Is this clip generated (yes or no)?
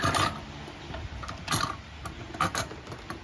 no